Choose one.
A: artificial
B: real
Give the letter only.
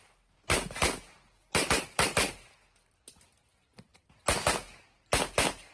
B